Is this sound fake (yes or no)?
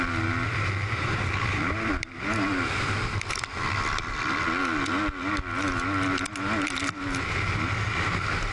no